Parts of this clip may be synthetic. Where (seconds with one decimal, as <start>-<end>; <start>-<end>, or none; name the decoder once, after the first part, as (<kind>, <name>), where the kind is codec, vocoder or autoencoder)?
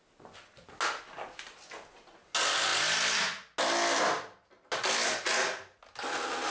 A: none